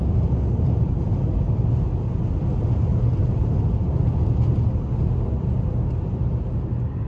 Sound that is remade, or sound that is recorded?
recorded